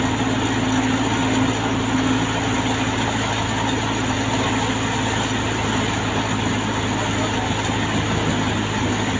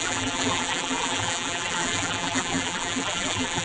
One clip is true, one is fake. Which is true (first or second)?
first